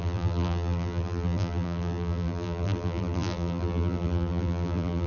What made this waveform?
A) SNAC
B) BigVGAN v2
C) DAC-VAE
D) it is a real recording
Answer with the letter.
B